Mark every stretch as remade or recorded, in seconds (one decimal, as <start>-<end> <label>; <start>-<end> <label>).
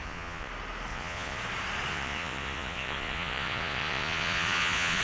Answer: 0.0-0.5 remade; 0.5-0.9 recorded; 0.9-1.4 remade; 1.4-1.9 recorded; 1.9-5.0 remade